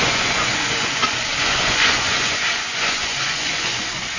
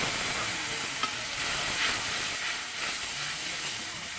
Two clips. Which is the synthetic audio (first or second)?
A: first